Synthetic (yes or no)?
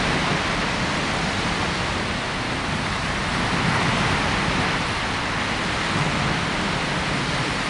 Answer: no